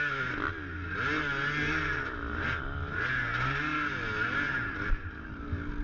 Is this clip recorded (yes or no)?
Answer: yes